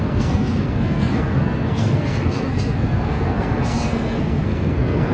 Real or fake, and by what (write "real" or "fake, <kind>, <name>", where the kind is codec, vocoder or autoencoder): fake, codec, SNAC